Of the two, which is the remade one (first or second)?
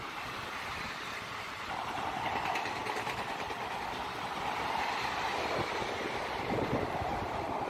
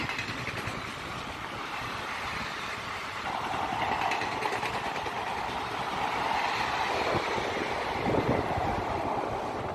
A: first